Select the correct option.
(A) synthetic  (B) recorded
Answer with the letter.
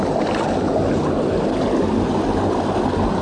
B